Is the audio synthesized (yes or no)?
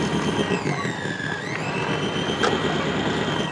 no